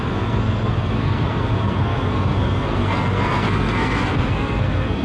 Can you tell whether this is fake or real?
fake